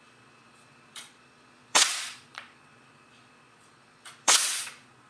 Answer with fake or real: fake